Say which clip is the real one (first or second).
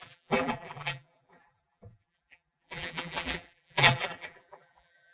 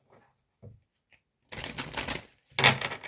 second